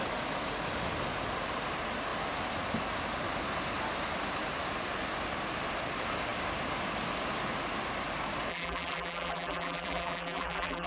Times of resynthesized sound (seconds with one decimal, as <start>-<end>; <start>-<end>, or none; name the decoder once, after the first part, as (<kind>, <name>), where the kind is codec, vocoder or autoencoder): 8.5-10.9 (vocoder, BigVGAN v2)